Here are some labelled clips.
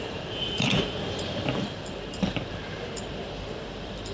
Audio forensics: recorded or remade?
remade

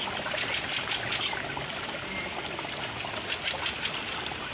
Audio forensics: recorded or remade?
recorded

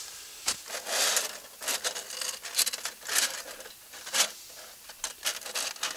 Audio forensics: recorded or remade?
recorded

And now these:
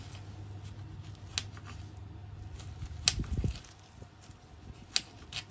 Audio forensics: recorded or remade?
recorded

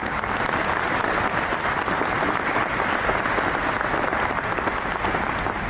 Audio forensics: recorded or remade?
recorded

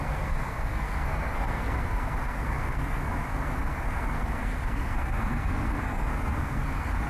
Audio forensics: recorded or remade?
remade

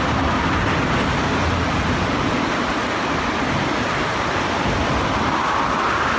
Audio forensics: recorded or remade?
recorded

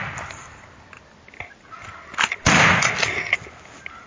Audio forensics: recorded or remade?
recorded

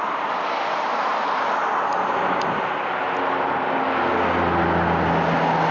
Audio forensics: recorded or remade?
recorded